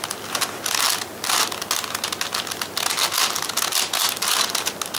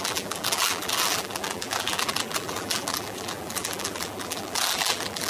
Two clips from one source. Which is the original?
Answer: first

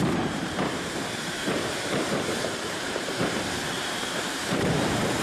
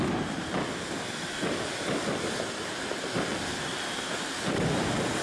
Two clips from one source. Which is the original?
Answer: second